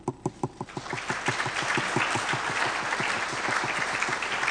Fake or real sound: fake